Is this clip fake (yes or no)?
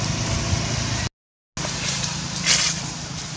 no